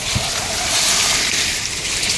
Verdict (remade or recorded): recorded